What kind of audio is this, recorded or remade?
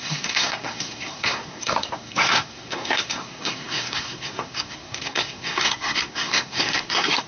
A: remade